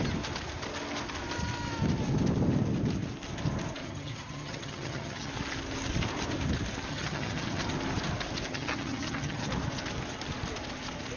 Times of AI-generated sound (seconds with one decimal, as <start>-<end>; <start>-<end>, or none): 3.8-5.3; 6.9-7.6; 8.5-9.5

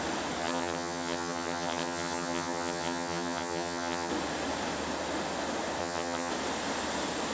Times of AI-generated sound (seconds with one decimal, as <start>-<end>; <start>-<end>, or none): 0.4-4.1; 5.8-6.3

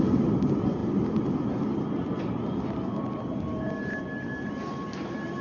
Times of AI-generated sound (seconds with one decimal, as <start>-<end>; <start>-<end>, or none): none

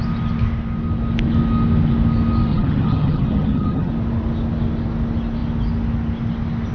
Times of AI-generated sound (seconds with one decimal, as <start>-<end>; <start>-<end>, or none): 2.5-3.9